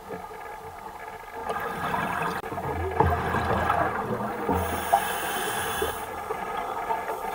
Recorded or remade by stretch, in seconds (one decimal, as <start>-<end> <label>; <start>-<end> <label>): 0.0-7.3 recorded